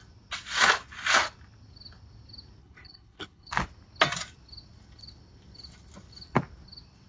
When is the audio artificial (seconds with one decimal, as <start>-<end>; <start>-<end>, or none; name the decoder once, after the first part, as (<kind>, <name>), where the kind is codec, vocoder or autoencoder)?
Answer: 2.6-3.5 (codec, HILCodec)